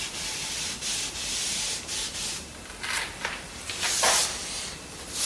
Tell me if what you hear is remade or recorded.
recorded